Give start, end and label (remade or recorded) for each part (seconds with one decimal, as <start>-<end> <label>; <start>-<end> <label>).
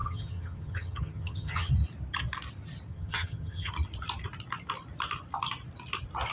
0.0-1.7 remade; 1.7-2.9 recorded; 2.9-3.7 remade; 3.7-6.3 recorded